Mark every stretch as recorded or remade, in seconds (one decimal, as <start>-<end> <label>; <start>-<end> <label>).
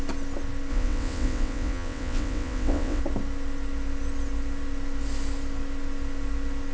0.0-0.7 recorded; 0.7-3.0 remade; 3.0-6.7 recorded